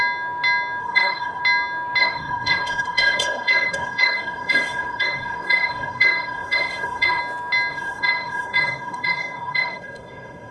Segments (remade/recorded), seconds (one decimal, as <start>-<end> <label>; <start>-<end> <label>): 0.0-0.8 recorded; 0.8-1.4 remade; 1.4-2.0 recorded; 2.0-7.2 remade; 7.2-7.7 recorded; 7.7-10.5 remade